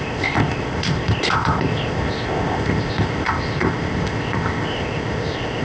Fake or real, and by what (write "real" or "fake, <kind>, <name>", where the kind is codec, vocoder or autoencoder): fake, codec, ZipCodec